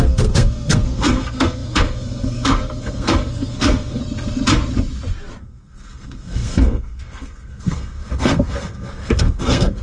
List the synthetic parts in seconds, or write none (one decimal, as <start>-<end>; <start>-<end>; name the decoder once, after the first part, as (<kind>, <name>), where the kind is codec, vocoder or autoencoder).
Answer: 0.0-4.0 (codec, SNAC); 5.4-9.8

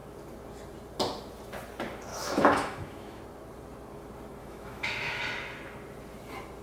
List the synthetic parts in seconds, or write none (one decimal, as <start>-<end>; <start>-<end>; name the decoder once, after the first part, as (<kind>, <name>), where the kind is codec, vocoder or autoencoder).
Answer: 2.1-3.2 (autoencoder, DAC-VAE); 4.4-5.2

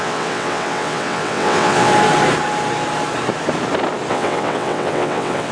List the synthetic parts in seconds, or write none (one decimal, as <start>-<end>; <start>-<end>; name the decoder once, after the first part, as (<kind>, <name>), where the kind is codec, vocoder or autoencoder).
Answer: 0.0-1.9 (vocoder, WaveNeXt); 4.1-5.5

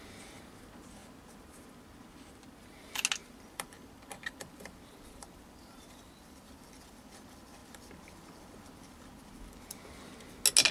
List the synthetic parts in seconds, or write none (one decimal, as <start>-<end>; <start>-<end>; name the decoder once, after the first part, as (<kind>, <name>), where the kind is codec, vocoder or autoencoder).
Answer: 3.2-6.8 (vocoder, BigVGAN v2)

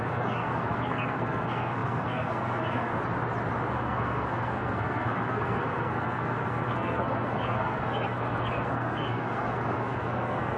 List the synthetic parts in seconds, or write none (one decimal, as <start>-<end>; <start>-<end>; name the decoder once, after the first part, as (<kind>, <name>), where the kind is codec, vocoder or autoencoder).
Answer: 0.0-2.9 (codec, SNAC); 3.7-10.6

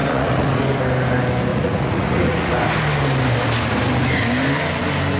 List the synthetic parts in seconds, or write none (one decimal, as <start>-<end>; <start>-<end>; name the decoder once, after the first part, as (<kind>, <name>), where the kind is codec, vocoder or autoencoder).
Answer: 0.0-0.6 (vocoder, Vocos); 1.5-2.5